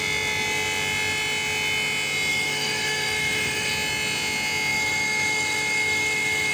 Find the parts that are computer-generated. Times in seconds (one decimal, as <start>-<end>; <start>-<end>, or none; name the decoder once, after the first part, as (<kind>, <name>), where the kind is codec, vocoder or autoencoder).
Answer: 2.3-3.7 (autoencoder, DAC-VAE); 4.7-6.5